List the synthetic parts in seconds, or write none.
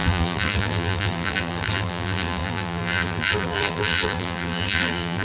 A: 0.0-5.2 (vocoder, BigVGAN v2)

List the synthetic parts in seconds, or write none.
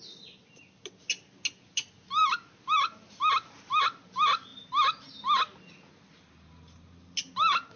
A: none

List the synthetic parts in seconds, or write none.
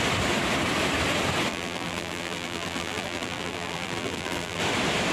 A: 1.5-4.6 (vocoder, BigVGAN v2)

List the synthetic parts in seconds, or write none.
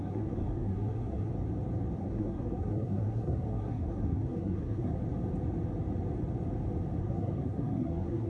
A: 0.0-1.3 (codec, SNAC); 2.0-5.0; 7.0-8.3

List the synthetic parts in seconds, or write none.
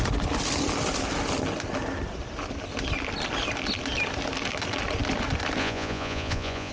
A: 5.6-6.7 (vocoder, Vocos)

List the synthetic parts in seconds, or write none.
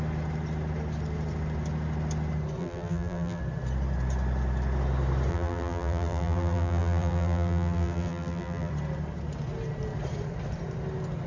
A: 2.6-3.4 (vocoder, BigVGAN v2); 5.3-8.7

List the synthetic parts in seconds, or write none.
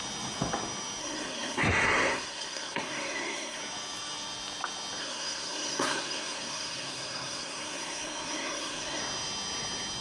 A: 1.0-3.6 (codec, SNAC); 5.0-9.0